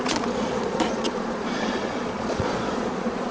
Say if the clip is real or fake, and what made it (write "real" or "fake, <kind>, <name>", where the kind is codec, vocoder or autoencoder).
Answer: fake, vocoder, Vocos